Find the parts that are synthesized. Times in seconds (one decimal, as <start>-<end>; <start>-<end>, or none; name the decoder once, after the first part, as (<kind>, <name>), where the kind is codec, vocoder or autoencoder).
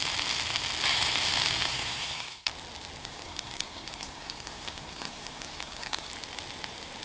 1.7-2.5 (codec, SNAC); 3.0-6.1